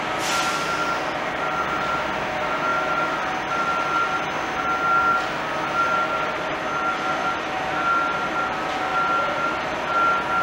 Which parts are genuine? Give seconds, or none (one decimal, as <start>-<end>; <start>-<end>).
0.0-10.4